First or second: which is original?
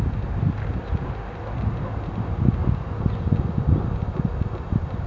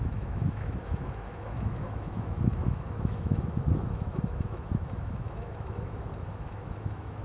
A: first